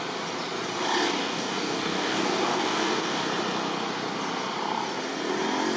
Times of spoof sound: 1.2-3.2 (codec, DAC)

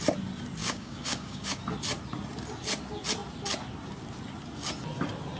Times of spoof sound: 0.6-1.6 (codec, DAC)

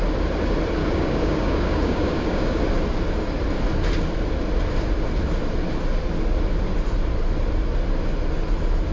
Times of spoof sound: 0.8-2.6 (codec, DAC)

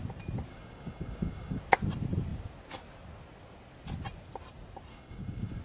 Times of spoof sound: 0.5-1.6 (codec, DAC); 4.9-5.6

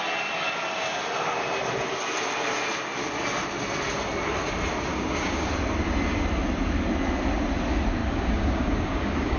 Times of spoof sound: 4.9-5.5 (codec, DAC); 8.0-9.4

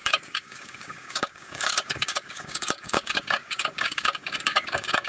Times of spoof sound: 0.0-5.1 (codec, DAC)

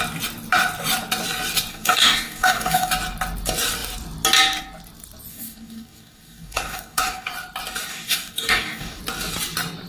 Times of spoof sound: 1.7-2.9 (codec, DAC); 5.3-7.3; 7.9-9.0